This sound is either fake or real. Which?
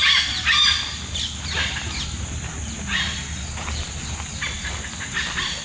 real